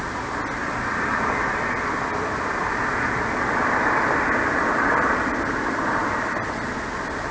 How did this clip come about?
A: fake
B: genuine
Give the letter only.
B